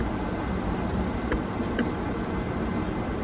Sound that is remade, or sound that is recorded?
recorded